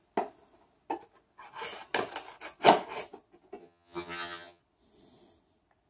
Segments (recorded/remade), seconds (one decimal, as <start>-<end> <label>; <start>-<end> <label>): 0.0-3.6 recorded; 3.6-4.6 remade; 4.6-5.9 recorded